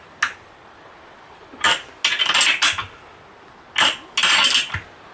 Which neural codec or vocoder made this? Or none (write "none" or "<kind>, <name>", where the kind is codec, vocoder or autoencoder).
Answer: none